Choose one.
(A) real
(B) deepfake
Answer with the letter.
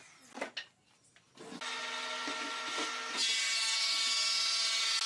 A